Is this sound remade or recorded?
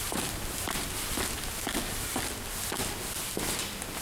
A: remade